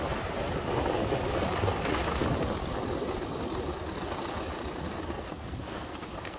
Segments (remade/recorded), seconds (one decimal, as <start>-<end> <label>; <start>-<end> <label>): 0.0-5.0 recorded; 5.0-6.4 remade